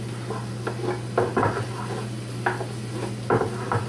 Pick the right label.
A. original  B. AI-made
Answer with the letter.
A